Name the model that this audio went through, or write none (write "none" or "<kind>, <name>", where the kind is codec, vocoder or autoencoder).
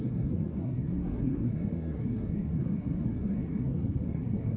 codec, SNAC